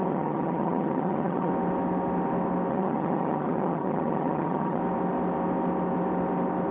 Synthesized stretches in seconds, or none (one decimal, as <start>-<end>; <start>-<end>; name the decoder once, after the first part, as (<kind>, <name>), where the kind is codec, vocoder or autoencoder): 0.0-1.5 (vocoder, HiFi-GAN); 2.7-4.8